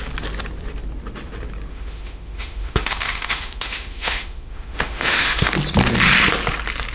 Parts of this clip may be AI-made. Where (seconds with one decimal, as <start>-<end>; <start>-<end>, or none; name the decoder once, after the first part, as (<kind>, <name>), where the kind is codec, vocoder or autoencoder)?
1.7-5.5 (autoencoder, DAC-VAE)